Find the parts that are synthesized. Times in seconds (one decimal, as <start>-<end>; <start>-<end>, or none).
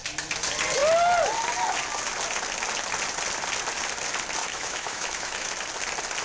4.4-5.5